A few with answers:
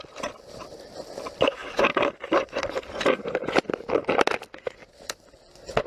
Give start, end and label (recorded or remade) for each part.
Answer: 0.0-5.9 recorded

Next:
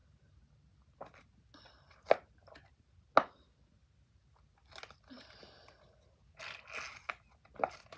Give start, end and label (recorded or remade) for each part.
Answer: 0.0-8.0 recorded

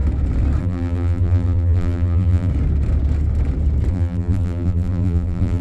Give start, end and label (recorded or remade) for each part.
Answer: 0.0-0.6 recorded; 0.6-2.5 remade; 2.5-3.9 recorded; 3.9-5.6 remade

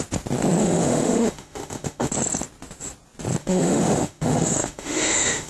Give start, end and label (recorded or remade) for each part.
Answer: 0.0-0.6 recorded; 0.6-2.1 remade; 2.1-3.4 recorded; 3.4-5.5 remade

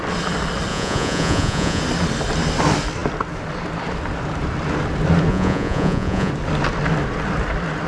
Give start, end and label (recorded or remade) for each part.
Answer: 0.0-0.7 recorded; 0.7-1.8 remade; 1.8-5.3 recorded; 5.3-6.3 remade; 6.3-7.9 recorded